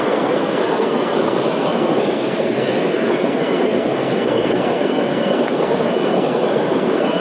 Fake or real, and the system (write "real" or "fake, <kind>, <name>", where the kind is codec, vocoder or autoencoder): fake, codec, SNAC